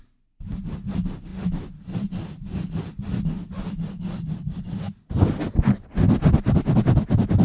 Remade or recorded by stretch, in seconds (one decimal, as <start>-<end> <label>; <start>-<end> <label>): 0.0-7.4 recorded